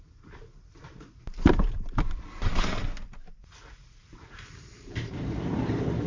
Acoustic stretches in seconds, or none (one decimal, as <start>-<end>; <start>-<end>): 0.0-0.8; 2.0-4.1